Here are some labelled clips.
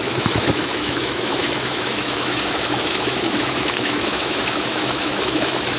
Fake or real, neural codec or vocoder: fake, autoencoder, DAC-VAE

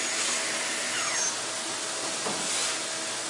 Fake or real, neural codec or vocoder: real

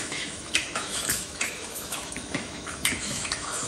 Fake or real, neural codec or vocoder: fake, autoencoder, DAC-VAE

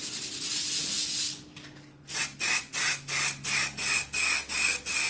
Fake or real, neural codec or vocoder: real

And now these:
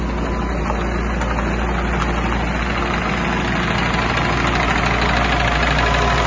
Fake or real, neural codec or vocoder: real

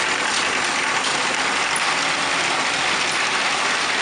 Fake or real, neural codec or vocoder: real